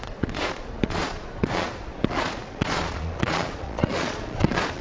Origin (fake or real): fake